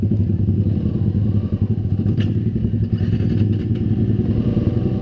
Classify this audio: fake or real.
real